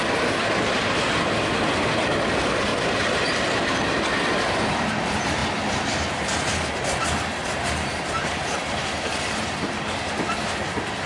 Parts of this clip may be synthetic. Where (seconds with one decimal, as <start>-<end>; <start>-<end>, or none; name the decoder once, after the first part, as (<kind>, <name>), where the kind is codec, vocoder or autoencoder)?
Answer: 2.7-3.6 (vocoder, BigVGAN v2); 7.4-10.1